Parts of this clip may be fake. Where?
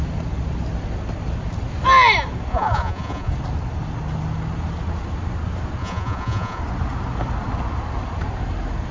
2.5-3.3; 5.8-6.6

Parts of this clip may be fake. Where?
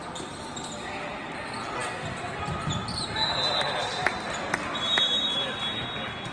4.1-5.1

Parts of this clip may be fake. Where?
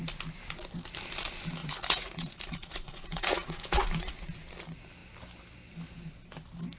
1.6-4.3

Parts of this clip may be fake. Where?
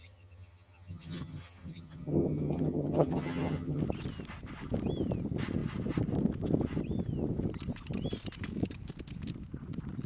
0.0-3.8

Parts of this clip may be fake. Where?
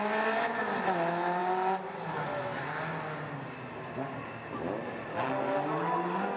none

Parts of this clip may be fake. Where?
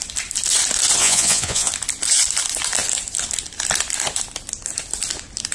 1.0-1.7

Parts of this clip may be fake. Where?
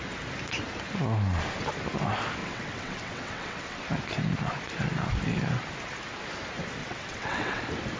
2.4-3.8; 6.8-7.6